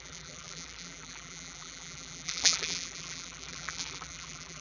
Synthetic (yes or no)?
yes